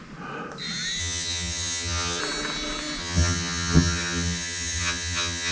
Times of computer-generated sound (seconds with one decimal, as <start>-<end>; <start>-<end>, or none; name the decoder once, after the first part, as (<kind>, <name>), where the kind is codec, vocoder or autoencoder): 1.0-2.2 (vocoder, HiFi-GAN); 3.0-5.5